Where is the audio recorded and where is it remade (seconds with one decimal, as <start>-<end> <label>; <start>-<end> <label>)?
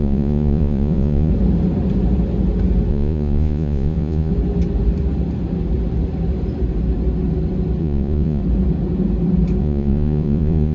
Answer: 0.0-1.3 remade; 1.3-2.9 recorded; 2.9-4.3 remade; 4.3-7.8 recorded; 7.8-8.4 remade; 8.4-9.6 recorded; 9.6-10.7 remade